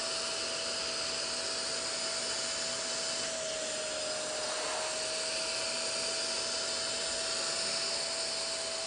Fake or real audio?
real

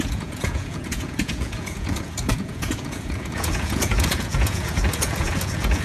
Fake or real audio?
fake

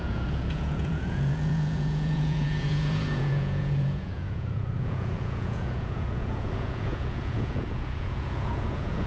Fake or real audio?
fake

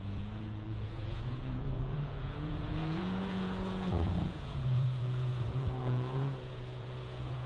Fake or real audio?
fake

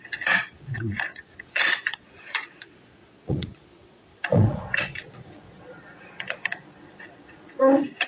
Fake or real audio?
fake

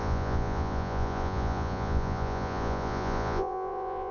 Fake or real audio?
fake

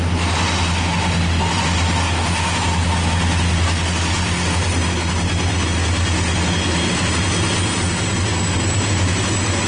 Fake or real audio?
real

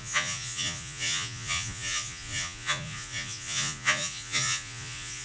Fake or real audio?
fake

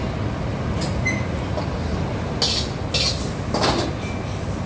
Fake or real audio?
real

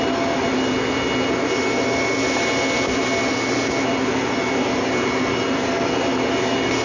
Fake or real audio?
real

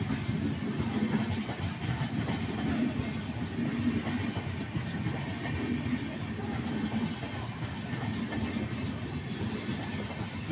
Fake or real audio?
real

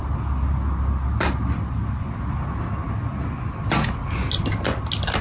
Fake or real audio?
real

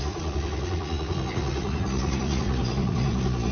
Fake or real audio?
fake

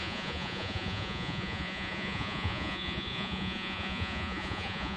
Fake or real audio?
fake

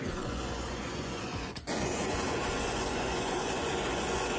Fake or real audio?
fake